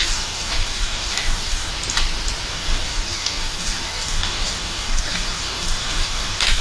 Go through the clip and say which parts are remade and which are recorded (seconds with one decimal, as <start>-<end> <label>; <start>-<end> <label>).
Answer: 0.0-1.7 remade; 1.7-2.5 recorded; 2.5-6.6 remade